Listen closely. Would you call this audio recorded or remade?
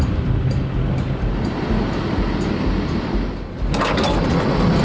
recorded